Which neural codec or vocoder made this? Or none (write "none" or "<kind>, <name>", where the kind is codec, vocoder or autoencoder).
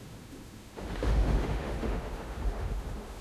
autoencoder, DAC-VAE